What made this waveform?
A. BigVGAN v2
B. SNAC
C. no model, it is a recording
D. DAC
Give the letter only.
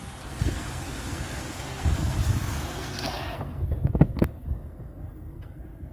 B